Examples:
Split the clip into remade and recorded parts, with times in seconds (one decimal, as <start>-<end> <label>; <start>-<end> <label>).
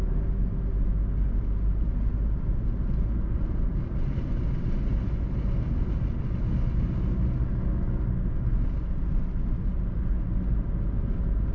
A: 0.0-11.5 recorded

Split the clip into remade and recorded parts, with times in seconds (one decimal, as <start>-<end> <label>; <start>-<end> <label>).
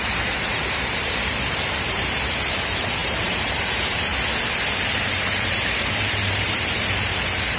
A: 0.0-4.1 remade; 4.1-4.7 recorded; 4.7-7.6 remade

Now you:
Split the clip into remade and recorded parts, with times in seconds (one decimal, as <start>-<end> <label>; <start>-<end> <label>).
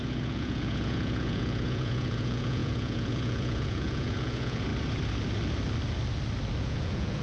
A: 0.0-4.7 remade; 4.7-6.6 recorded; 6.6-7.2 remade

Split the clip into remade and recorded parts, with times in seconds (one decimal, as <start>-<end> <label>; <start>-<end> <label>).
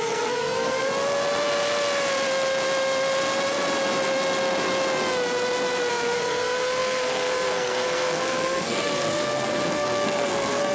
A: 0.0-0.9 remade; 0.9-5.9 recorded; 5.9-10.7 remade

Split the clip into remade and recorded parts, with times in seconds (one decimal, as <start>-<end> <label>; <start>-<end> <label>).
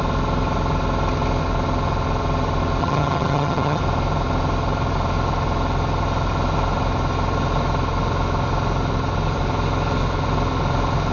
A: 0.0-2.8 recorded; 2.8-3.8 remade; 3.8-11.1 recorded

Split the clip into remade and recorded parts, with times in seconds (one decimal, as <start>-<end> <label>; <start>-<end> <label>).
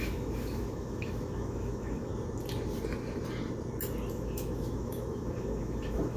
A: 0.0-2.1 remade; 2.1-4.1 recorded; 4.1-6.2 remade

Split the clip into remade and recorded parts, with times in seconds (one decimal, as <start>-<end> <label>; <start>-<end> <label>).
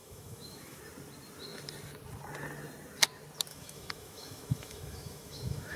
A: 0.0-0.8 remade; 0.8-3.5 recorded; 3.5-5.8 remade